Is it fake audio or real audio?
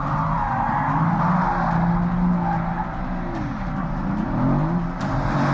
real